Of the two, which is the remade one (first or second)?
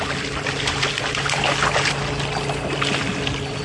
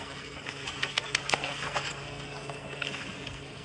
second